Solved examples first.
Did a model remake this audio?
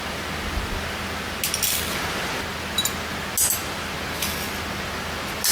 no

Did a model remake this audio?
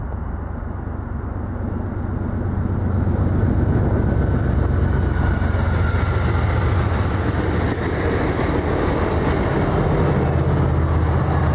no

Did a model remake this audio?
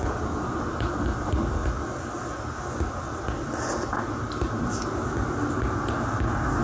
no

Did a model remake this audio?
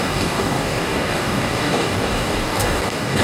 yes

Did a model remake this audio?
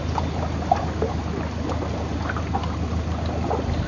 no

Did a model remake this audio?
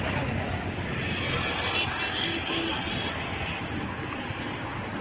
no